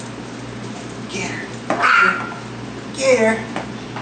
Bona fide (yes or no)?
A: yes